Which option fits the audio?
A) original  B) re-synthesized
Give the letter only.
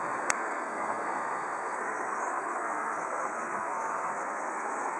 B